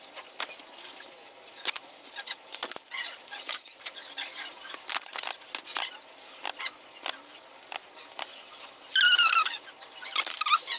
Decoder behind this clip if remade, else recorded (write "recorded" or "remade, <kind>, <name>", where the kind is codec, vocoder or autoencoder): recorded